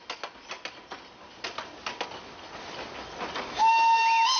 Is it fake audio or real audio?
real